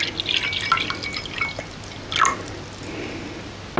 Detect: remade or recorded recorded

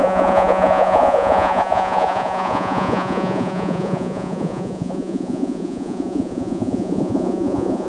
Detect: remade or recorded remade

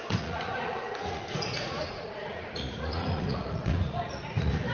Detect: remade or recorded remade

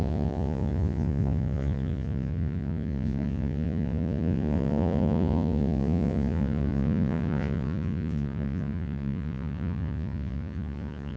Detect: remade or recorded remade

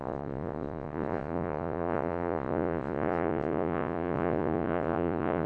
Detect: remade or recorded remade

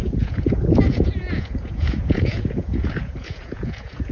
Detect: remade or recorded remade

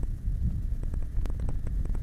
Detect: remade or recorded remade